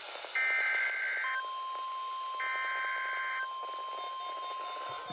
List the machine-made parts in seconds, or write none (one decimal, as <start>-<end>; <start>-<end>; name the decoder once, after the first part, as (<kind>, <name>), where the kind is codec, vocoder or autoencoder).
none